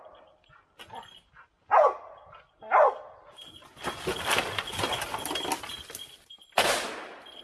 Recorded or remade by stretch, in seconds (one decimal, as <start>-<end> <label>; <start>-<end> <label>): 0.0-7.4 recorded